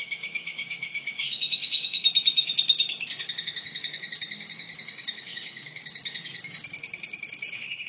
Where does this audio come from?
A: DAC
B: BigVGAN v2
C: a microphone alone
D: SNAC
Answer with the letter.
A